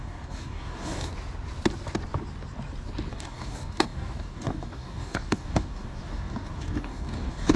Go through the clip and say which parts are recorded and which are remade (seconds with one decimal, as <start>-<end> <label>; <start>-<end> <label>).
0.0-1.1 remade; 1.1-3.1 recorded; 3.1-7.6 remade